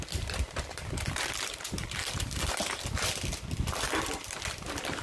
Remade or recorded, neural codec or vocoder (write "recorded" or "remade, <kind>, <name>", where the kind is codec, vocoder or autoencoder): recorded